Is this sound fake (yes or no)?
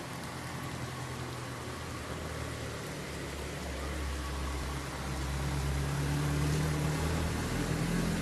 no